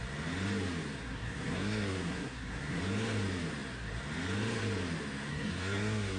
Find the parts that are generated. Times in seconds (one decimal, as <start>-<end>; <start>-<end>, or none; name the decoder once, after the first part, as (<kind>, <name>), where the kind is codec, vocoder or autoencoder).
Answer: 1.0-2.8 (codec, SNAC); 5.3-6.2